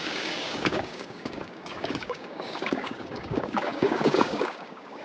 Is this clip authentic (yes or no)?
no